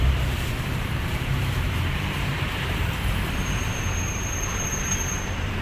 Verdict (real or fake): fake